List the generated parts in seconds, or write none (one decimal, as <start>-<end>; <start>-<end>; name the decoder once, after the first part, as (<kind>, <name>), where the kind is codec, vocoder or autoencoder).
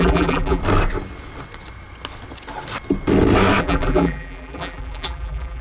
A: 0.0-0.6 (vocoder, BigVGAN v2); 3.6-5.6